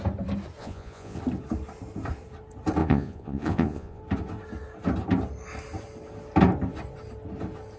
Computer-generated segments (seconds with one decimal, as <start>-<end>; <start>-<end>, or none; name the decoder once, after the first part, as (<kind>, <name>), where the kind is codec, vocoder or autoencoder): 0.6-1.2 (vocoder, Vocos); 2.8-4.0